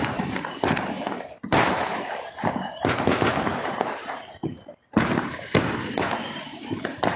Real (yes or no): no